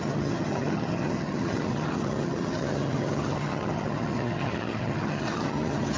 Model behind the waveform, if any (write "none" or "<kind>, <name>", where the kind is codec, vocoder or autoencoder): vocoder, HiFi-GAN